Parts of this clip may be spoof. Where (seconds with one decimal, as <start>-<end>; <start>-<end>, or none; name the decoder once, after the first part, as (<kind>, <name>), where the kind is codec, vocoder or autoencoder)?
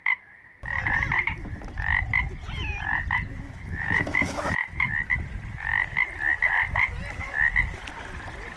3.3-4.9 (autoencoder, DAC-VAE)